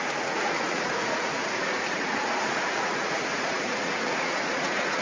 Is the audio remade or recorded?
remade